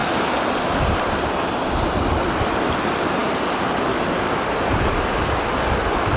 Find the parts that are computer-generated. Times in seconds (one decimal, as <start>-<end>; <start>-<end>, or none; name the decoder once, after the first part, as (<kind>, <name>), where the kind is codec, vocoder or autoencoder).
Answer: none